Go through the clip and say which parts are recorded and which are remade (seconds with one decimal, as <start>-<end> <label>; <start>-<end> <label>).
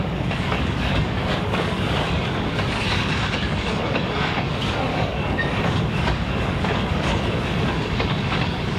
0.0-8.8 remade